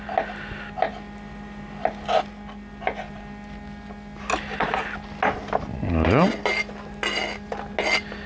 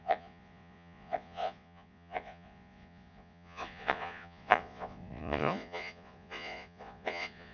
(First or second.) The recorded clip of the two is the first